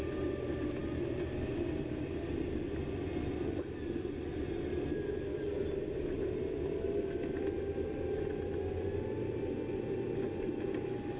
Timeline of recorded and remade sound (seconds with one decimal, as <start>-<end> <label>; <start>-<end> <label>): 0.0-11.2 recorded